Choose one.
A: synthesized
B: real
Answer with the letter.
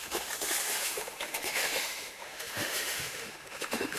A